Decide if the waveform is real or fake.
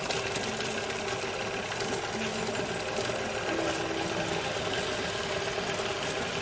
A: real